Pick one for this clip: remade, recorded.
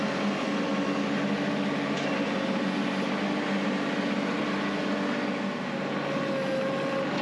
recorded